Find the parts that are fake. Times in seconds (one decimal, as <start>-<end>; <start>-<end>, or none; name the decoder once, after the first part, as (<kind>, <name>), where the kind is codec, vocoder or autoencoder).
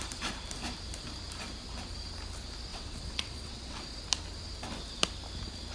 2.7-3.8 (vocoder, WaveNeXt)